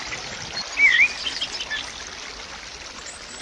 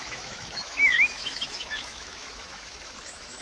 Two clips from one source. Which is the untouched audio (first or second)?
first